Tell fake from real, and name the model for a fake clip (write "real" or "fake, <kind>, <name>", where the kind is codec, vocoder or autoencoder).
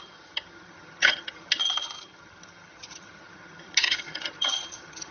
fake, vocoder, HiFi-GAN